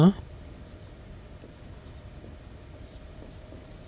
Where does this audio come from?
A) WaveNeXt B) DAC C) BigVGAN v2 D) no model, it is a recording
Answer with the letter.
D